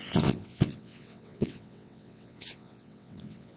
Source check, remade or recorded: remade